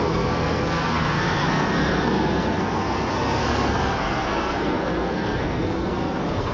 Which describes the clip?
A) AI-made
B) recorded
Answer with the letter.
A